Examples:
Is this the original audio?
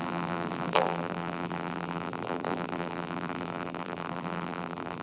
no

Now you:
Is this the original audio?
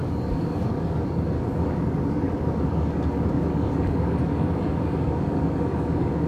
no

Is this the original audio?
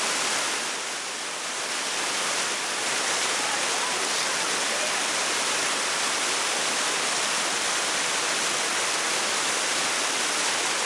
yes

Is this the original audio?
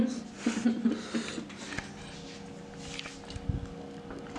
yes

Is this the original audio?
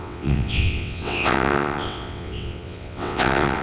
no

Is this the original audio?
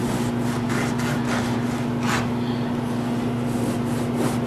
yes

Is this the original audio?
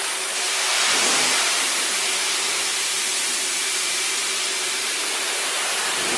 no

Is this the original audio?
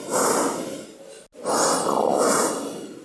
yes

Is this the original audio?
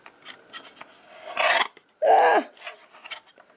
yes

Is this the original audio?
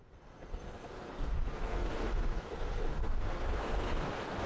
no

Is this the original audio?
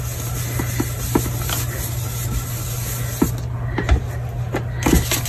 yes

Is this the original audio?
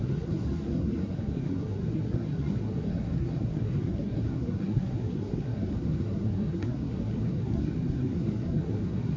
no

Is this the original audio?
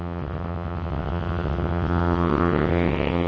no